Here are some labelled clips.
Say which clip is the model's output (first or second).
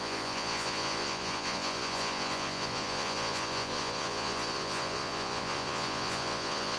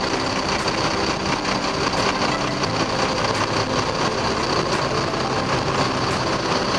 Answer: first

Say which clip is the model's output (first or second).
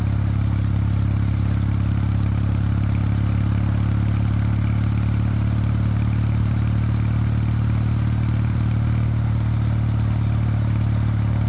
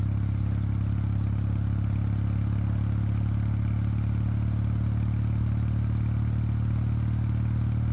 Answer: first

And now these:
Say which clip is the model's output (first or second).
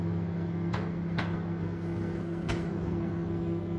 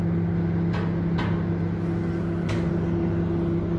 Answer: first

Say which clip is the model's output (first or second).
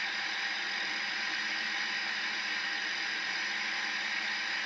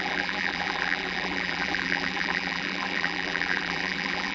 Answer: second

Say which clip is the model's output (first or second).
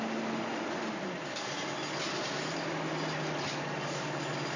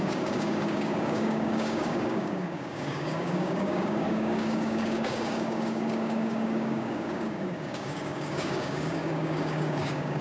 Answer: second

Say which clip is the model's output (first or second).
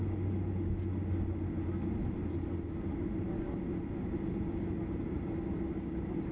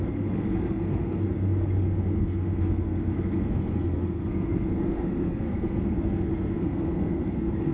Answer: second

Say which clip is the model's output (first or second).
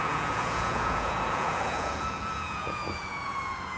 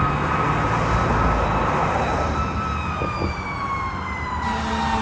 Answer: first